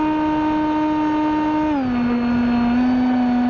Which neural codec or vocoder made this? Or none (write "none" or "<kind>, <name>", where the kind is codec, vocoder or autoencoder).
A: none